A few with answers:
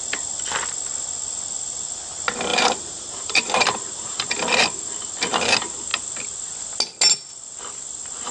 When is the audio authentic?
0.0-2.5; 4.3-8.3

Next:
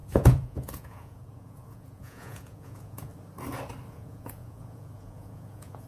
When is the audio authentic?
3.1-3.9

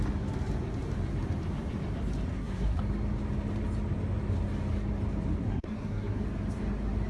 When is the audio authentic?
0.0-2.3; 2.8-5.4; 6.2-7.1

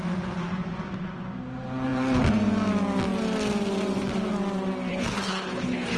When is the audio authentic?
0.0-4.9

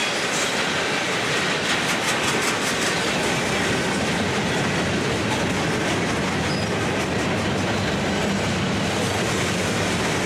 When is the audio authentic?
0.0-10.3

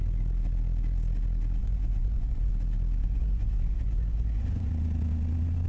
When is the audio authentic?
0.0-1.6; 2.5-3.0; 4.7-5.7